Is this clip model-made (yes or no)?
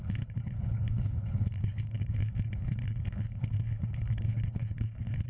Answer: yes